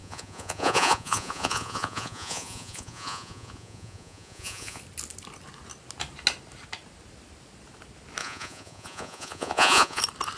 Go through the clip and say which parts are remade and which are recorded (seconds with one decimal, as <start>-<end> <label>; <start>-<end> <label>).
0.0-4.8 remade; 4.8-8.2 recorded; 8.2-10.0 remade; 10.0-10.4 recorded

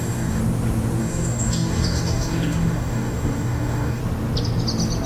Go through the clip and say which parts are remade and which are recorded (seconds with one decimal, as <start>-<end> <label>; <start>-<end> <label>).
0.0-0.4 remade; 0.4-1.0 recorded; 1.0-4.0 remade; 4.0-5.1 recorded

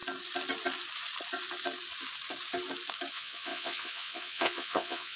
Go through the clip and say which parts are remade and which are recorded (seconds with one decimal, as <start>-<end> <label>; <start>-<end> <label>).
0.0-3.1 recorded; 3.1-5.2 remade

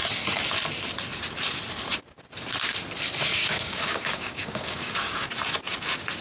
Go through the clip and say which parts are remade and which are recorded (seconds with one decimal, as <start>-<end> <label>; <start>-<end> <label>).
0.0-3.4 recorded; 3.4-5.3 remade; 5.3-6.2 recorded

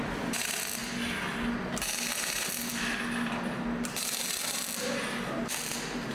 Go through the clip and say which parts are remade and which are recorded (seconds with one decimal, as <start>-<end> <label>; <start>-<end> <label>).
0.0-6.1 recorded

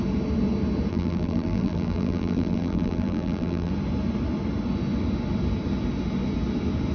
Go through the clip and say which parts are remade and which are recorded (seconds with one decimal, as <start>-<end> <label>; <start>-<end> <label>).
0.0-0.9 recorded; 0.9-3.7 remade; 3.7-6.9 recorded